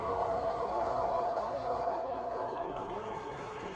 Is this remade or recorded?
remade